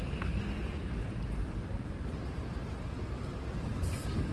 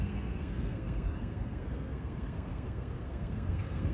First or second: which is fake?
second